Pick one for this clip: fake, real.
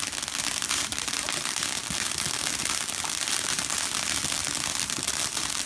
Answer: real